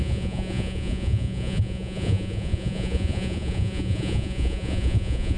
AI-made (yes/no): yes